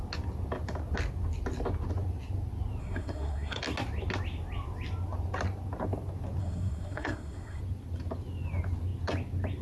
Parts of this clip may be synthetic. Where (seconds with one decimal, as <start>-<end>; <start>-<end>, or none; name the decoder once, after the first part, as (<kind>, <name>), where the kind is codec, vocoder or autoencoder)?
2.8-3.6 (codec, SNAC); 6.4-7.6